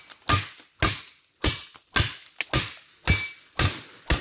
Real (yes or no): yes